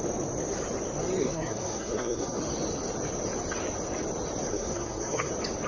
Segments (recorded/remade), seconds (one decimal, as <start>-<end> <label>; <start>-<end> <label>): 0.0-1.2 recorded; 1.2-2.4 remade; 2.4-4.5 recorded; 4.5-5.3 remade; 5.3-5.7 recorded